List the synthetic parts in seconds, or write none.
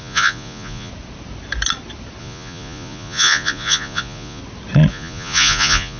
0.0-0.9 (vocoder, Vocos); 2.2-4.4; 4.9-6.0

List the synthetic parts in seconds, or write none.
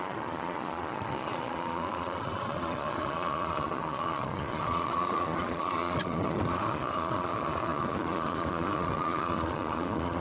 0.0-10.2 (vocoder, Vocos)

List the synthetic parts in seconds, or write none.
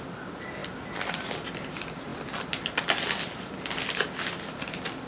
none